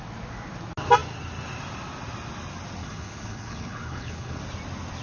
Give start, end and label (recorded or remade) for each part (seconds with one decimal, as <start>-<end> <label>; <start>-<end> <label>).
0.0-2.8 recorded; 2.8-4.4 remade; 4.4-5.0 recorded